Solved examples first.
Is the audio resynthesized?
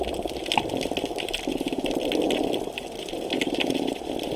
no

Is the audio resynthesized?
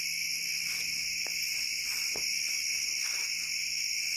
no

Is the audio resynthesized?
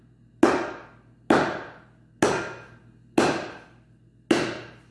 no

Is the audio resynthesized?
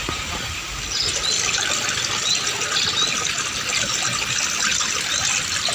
no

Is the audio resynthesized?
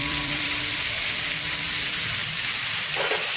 yes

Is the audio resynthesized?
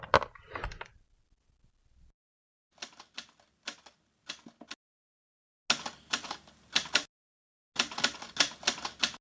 no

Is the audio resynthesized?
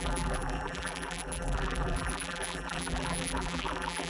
yes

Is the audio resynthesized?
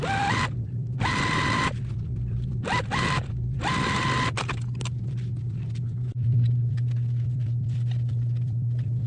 yes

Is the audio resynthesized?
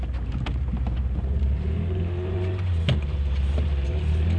yes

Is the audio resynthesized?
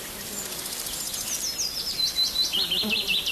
no